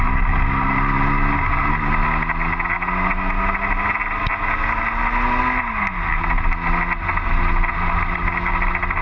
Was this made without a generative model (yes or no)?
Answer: yes